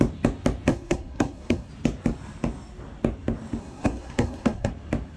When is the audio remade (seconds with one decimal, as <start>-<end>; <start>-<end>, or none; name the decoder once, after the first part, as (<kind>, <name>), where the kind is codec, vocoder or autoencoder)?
0.7-1.7 (codec, SNAC); 3.6-4.7

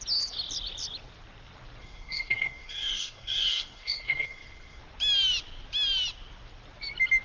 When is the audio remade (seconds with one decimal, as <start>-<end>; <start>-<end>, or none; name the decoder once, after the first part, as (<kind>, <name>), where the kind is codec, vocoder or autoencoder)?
1.8-4.8 (codec, SNAC)

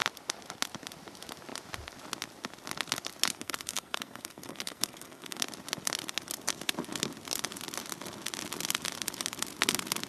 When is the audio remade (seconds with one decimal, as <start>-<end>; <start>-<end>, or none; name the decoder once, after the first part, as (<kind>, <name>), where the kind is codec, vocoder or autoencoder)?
3.3-5.4 (codec, SNAC)

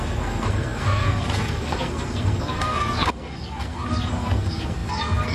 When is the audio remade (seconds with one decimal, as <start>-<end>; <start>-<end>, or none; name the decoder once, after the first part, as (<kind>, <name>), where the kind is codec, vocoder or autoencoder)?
0.0-5.3 (codec, SNAC)

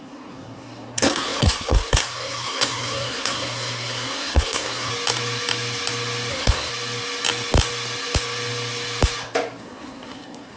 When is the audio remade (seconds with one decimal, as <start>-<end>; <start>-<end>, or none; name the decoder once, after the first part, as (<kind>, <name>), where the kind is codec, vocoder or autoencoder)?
0.0-4.9 (codec, SNAC); 6.3-6.7; 9.6-10.6

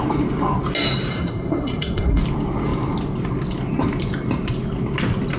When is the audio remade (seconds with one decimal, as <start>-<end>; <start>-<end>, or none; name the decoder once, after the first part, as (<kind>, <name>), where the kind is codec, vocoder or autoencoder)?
1.1-2.2 (codec, SNAC)

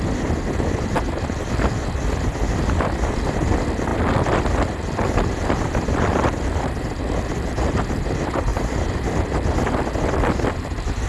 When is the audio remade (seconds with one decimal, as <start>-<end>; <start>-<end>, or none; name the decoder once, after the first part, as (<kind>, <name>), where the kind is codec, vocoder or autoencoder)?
none